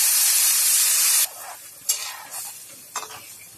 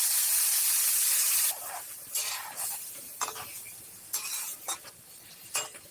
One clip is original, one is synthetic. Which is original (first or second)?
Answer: first